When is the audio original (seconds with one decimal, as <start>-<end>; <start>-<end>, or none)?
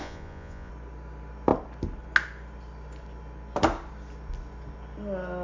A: 0.7-5.4